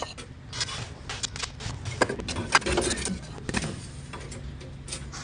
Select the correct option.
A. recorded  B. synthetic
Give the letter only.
A